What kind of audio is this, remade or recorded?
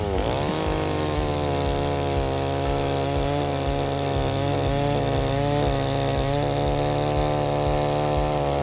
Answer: recorded